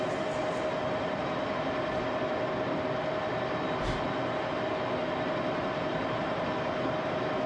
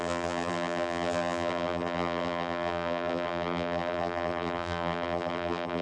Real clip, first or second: first